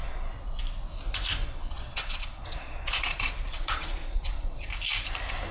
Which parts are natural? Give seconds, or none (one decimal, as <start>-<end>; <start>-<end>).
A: 0.6-1.4; 4.7-5.5